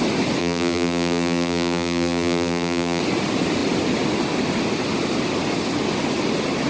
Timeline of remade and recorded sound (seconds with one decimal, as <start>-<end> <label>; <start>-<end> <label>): 0.0-0.4 recorded; 0.4-3.0 remade; 3.0-6.7 recorded